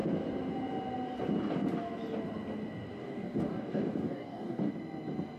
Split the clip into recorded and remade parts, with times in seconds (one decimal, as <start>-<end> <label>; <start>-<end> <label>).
0.0-3.0 recorded; 3.0-4.7 remade; 4.7-5.4 recorded